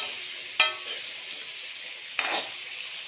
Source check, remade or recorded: recorded